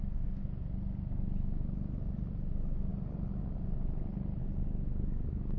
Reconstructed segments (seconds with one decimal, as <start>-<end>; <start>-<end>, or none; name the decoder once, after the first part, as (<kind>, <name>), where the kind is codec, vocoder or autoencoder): none